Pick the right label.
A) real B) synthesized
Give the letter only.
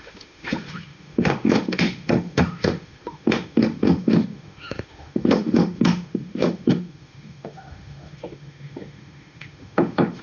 B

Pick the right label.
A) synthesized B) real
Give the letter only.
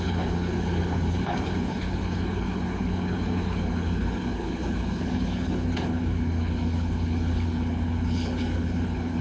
A